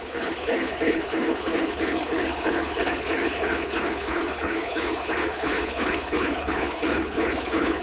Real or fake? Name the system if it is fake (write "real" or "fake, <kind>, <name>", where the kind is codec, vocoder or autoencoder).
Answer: fake, codec, HILCodec